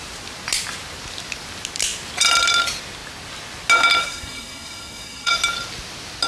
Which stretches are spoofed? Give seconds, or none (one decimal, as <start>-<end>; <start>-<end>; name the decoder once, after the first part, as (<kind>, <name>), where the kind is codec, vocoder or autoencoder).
4.0-5.3 (codec, SNAC)